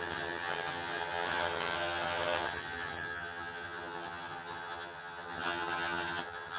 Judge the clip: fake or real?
fake